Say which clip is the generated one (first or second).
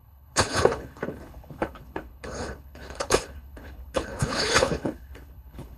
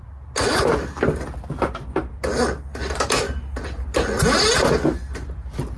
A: first